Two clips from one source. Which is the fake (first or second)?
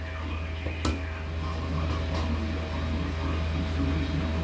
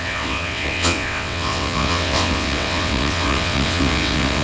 second